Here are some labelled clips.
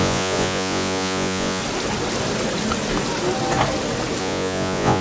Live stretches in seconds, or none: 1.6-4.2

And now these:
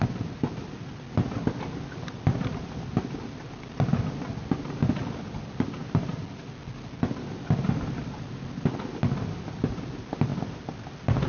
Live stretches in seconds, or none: 0.0-11.3

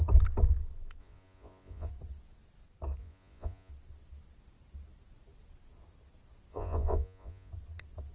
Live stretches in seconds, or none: 0.0-1.0; 1.9-3.0; 3.7-6.5; 7.5-8.1

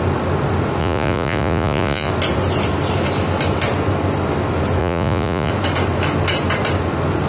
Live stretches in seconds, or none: 0.0-0.8; 2.1-4.8; 5.5-7.3

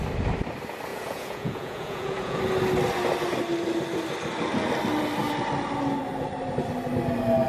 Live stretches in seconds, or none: 0.0-0.9; 2.4-7.5

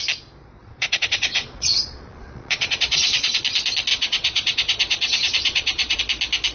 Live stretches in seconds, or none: 0.0-0.6; 3.4-3.9; 6.0-6.5

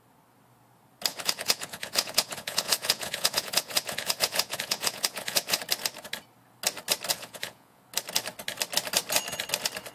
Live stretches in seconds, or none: 0.0-1.1; 5.6-7.1; 7.8-9.9

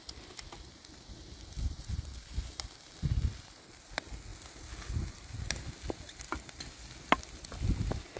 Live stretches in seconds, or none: 0.0-8.2